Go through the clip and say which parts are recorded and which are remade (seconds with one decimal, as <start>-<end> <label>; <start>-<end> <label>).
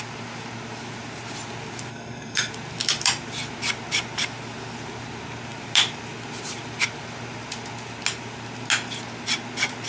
0.0-1.9 recorded; 1.9-2.5 remade; 2.5-9.9 recorded